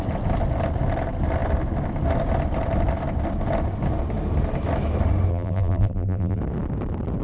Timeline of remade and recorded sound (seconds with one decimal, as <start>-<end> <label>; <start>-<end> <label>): 0.0-5.3 recorded; 5.3-6.4 remade; 6.4-7.2 recorded